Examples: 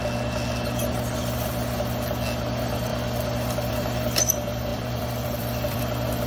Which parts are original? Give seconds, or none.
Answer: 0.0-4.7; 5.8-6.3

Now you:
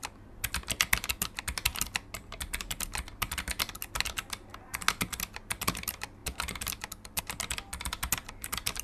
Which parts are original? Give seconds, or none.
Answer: 0.0-8.8

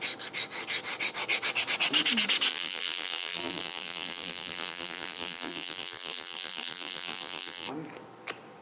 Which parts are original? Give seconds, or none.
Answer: 0.0-2.5; 7.7-8.6

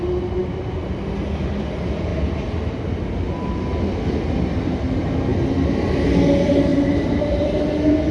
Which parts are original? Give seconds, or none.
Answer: 0.0-2.1; 2.9-6.7; 7.6-8.1

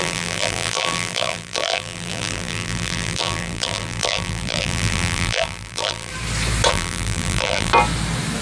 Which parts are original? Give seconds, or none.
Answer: 6.1-6.7; 7.7-8.4

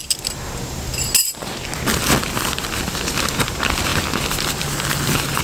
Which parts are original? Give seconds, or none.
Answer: 0.0-3.9

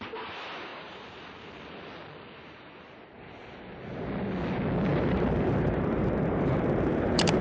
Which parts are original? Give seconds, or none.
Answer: 0.0-0.7; 1.2-4.9

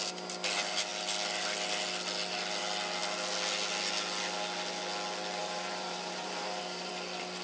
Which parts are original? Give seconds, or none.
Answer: 0.0-5.4; 6.9-7.4